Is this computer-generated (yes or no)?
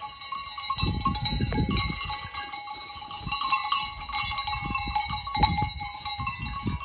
no